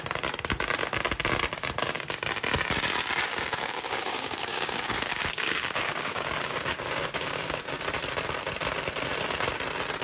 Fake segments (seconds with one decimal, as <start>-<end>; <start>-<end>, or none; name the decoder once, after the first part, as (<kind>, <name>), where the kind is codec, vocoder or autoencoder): 3.3-7.8 (codec, DAC)